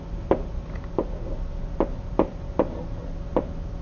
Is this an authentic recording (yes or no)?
yes